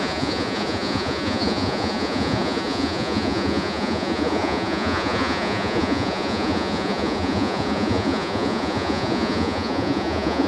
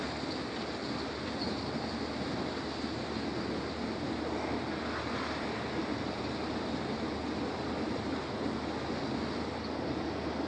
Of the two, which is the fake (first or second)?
first